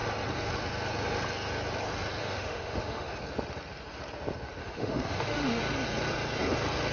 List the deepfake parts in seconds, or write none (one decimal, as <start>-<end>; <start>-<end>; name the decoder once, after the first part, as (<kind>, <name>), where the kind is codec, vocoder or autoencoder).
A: 2.2-3.2 (autoencoder, DAC-VAE); 4.6-5.6